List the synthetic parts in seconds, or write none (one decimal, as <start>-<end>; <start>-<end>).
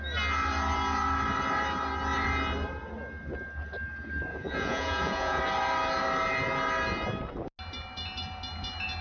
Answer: 4.3-5.4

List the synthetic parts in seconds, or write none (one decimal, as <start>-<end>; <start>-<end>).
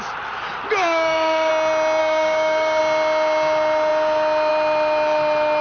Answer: 0.8-1.5; 2.0-2.8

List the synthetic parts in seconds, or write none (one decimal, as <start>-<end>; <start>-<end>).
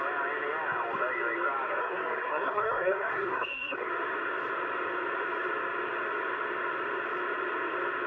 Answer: 1.8-3.9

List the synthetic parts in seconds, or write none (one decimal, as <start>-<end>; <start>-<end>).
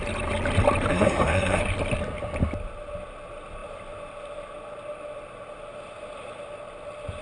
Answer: 0.9-1.6